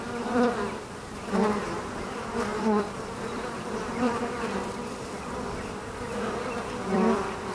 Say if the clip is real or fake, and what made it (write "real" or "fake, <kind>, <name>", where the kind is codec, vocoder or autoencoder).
fake, vocoder, BigVGAN v2